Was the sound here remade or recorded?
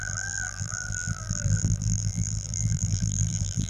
remade